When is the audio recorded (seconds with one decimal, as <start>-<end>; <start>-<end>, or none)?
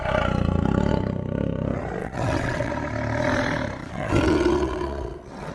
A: 0.0-2.0; 2.7-3.8